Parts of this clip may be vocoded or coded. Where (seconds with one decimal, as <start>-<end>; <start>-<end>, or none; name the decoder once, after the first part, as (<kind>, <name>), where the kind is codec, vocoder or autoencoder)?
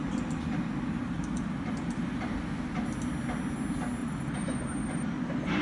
1.0-2.1 (vocoder, BigVGAN v2); 4.0-5.0